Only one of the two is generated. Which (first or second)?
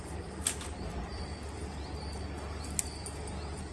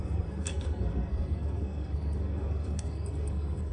second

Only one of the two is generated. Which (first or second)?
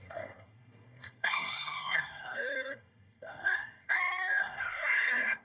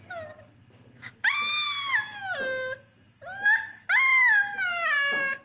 first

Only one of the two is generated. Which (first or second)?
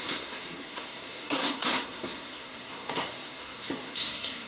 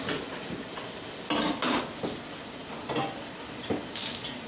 first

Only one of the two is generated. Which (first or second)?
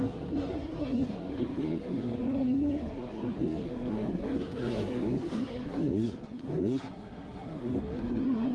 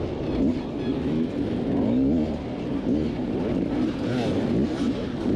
first